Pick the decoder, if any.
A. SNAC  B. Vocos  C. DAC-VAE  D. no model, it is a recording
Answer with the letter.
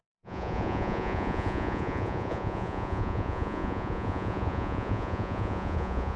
B